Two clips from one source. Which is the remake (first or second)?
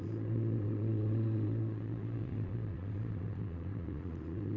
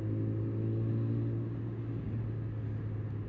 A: first